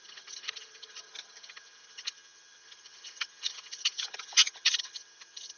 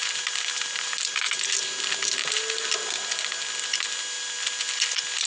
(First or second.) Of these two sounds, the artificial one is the first